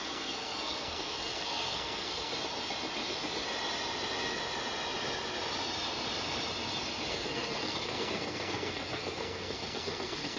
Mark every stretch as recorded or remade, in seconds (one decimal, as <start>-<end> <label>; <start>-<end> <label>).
0.0-2.3 remade; 2.3-7.1 recorded; 7.1-10.4 remade